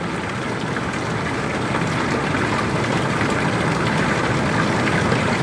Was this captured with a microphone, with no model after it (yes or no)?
yes